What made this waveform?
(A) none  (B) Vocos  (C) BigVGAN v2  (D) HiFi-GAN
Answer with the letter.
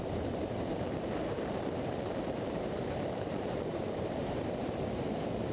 C